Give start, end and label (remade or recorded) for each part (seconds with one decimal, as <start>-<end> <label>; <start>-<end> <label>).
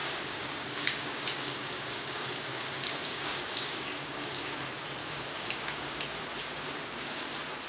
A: 0.0-4.6 remade; 4.6-5.0 recorded; 5.0-6.0 remade; 6.0-6.4 recorded; 6.4-7.2 remade; 7.2-7.7 recorded